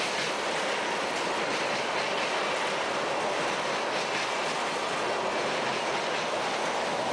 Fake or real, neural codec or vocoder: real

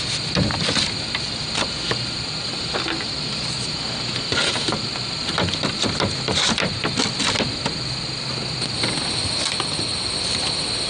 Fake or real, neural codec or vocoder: real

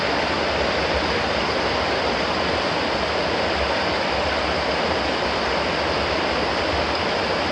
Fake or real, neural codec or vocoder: real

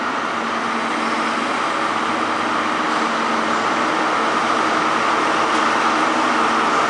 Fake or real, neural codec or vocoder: real